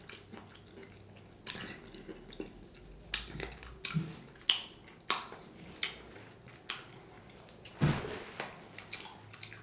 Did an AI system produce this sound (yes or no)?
no